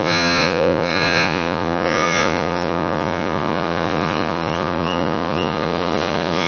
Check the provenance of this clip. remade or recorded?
remade